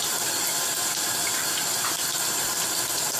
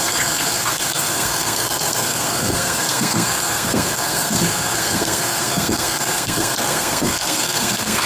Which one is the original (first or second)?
first